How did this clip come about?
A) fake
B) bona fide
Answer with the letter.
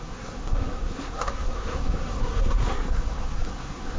A